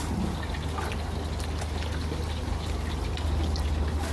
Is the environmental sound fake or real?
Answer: real